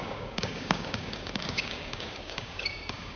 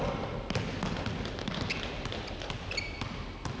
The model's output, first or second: first